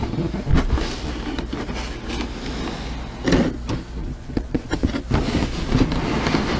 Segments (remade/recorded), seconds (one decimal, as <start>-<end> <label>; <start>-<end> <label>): 0.0-4.0 recorded; 4.0-4.9 remade; 4.9-6.6 recorded